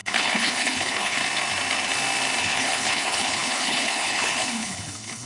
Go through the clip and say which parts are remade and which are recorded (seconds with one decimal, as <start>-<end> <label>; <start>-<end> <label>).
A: 0.0-1.2 remade; 1.2-2.4 recorded; 2.4-5.3 remade